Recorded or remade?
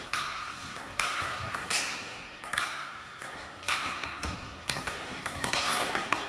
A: remade